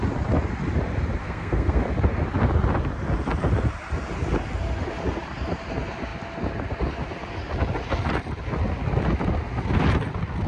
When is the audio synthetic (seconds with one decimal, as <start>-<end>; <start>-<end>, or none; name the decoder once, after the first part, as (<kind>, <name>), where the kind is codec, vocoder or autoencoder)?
1.2-1.8 (codec, SNAC)

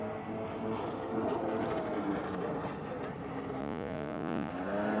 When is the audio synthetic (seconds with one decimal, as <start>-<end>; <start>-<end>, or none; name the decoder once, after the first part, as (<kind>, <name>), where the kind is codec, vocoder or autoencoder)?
3.6-4.5 (vocoder, Vocos)

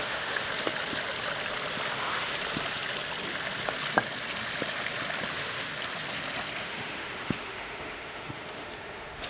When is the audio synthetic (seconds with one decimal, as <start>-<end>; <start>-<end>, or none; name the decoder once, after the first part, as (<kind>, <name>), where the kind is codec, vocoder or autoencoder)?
0.0-0.5 (autoencoder, DAC-VAE); 1.9-2.3; 5.3-5.7; 6.6-9.3